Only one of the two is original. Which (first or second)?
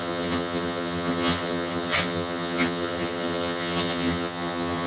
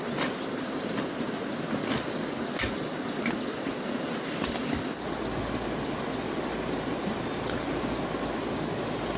second